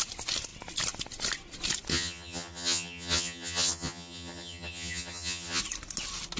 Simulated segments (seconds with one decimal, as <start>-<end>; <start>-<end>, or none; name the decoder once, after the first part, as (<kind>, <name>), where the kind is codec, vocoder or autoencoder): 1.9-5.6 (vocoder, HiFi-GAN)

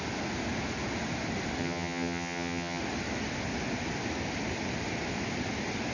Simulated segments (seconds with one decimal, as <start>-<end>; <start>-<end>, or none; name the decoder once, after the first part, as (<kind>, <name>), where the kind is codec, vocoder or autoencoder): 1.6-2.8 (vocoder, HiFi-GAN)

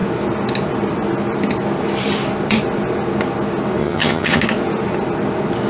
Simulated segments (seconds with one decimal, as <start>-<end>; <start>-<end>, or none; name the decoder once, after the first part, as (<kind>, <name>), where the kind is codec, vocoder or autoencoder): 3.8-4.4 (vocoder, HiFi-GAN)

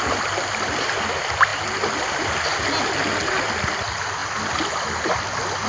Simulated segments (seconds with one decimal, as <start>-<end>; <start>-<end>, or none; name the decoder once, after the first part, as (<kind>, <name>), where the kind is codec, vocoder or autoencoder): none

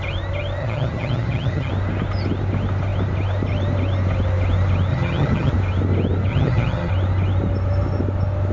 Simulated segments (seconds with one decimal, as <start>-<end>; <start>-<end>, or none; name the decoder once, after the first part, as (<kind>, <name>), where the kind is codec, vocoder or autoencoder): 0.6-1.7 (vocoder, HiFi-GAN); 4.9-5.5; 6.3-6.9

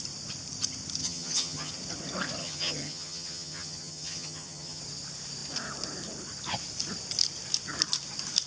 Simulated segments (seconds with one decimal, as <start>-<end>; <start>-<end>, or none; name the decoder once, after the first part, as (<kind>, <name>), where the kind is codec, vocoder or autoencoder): 1.0-1.7 (vocoder, HiFi-GAN); 2.4-4.8

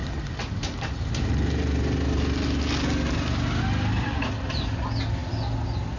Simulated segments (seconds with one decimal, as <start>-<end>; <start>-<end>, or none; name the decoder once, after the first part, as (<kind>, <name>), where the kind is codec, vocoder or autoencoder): none

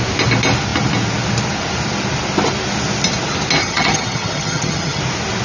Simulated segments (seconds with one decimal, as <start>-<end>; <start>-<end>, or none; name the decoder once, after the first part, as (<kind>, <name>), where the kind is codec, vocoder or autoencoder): 3.6-5.0 (vocoder, HiFi-GAN)